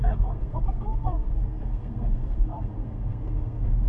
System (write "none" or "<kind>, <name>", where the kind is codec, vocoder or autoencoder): codec, SNAC